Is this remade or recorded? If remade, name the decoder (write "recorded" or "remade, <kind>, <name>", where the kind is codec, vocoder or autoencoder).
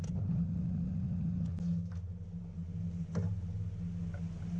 recorded